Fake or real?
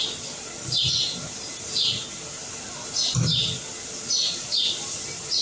real